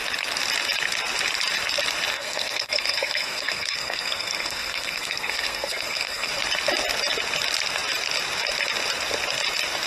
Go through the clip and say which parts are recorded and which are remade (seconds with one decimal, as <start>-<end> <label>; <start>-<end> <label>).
0.0-2.1 recorded; 2.1-6.3 remade; 6.3-9.9 recorded